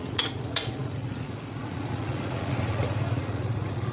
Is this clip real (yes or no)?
no